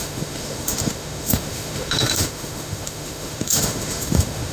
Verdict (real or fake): fake